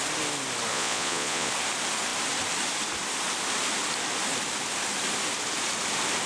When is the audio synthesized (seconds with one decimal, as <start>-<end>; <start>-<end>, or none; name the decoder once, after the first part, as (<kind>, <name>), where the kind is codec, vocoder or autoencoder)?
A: 0.7-1.5 (vocoder, Vocos)

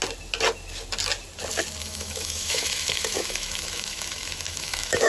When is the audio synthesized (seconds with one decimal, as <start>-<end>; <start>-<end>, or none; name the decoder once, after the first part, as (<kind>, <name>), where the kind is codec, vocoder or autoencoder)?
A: 1.8-5.1 (autoencoder, DAC-VAE)

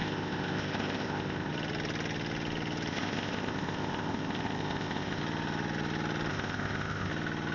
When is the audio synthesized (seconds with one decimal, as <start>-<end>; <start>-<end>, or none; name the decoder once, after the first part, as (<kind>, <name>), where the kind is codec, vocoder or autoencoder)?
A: 0.0-1.5 (codec, ZipCodec); 2.9-5.2; 6.3-7.1

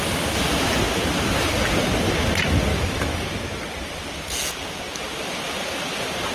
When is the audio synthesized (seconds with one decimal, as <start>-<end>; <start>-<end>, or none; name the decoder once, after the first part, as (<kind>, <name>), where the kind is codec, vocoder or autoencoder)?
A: 2.7-3.2 (autoencoder, DAC-VAE)

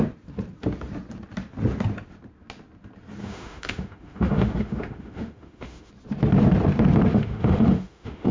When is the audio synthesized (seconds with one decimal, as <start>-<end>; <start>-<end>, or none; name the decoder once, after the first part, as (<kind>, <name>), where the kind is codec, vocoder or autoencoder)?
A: 3.2-5.9 (autoencoder, DAC-VAE); 7.1-8.3

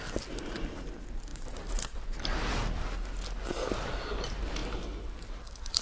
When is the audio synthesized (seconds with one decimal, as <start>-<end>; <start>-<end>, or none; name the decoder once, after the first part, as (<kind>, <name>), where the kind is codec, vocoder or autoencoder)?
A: 1.3-2.5 (vocoder, BigVGAN v2)